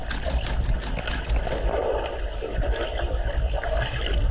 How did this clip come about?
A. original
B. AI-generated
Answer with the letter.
A